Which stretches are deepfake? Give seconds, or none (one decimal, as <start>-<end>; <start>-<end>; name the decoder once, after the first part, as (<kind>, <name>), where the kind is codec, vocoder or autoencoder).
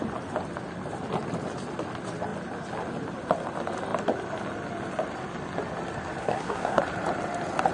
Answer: 6.2-6.8 (codec, SNAC)